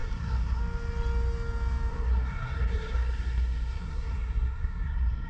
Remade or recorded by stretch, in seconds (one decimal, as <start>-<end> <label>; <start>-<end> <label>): 0.0-0.6 remade; 0.6-1.9 recorded; 1.9-5.3 remade